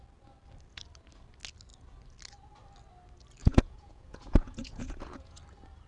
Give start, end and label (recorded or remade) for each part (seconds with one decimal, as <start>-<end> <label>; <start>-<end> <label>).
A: 0.0-3.4 recorded; 3.4-5.4 remade; 5.4-5.9 recorded